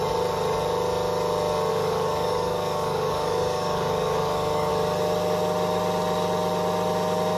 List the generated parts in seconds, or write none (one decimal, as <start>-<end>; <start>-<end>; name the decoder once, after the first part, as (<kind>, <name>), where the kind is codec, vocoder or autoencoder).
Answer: 1.7-4.7 (codec, DAC)